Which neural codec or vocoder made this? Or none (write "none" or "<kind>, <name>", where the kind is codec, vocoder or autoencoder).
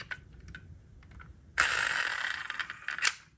none